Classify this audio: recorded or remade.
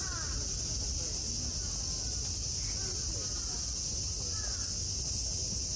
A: recorded